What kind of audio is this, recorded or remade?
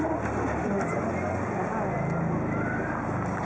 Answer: recorded